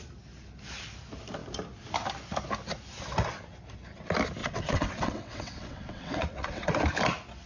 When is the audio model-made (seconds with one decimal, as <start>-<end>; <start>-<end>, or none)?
4.4-6.7